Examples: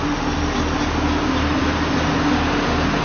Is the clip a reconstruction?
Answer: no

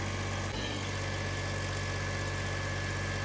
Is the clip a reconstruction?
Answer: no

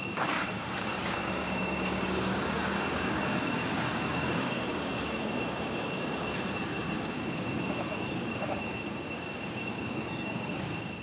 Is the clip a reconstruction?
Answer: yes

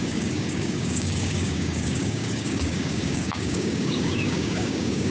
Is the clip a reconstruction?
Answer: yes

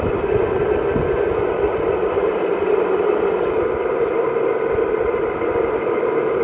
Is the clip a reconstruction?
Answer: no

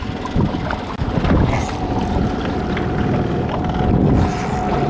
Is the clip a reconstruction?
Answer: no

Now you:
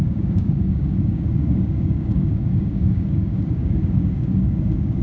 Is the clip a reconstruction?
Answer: yes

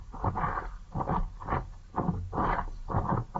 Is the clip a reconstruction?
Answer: no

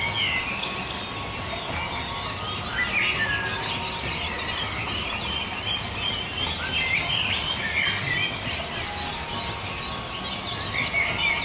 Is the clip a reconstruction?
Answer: no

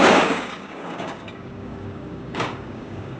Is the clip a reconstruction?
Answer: yes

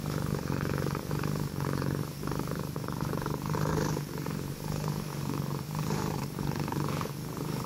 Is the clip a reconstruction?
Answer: yes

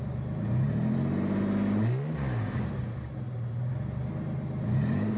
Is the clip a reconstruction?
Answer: no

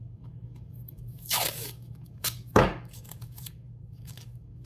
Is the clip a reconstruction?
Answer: yes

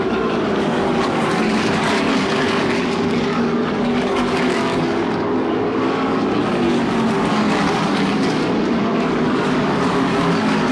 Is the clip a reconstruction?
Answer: yes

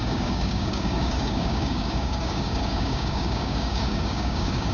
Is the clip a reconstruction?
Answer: yes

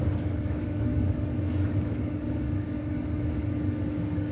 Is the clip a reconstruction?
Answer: yes